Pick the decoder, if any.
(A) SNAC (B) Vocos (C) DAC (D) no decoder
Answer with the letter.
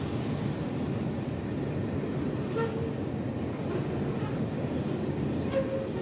D